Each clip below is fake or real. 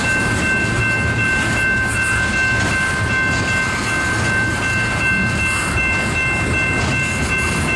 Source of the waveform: real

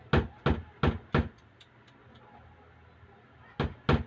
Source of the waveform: real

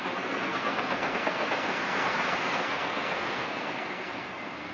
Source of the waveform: fake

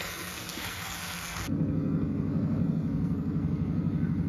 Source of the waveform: fake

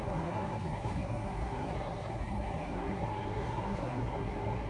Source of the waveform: fake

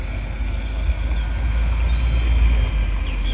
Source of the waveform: real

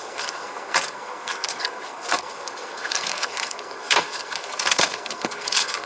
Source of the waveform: fake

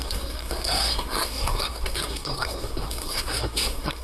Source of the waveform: fake